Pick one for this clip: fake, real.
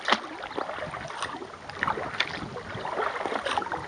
real